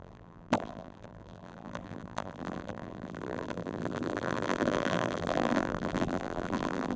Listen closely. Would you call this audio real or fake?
fake